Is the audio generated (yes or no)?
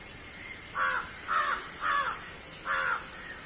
no